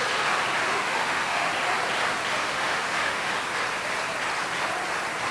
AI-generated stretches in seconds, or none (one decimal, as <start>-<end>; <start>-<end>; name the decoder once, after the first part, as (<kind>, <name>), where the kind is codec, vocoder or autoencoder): 0.7-1.5 (autoencoder, DAC-VAE); 2.4-3.3